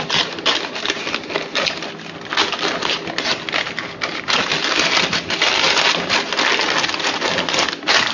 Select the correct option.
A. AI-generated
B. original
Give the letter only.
B